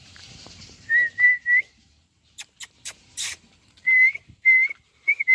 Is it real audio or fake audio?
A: fake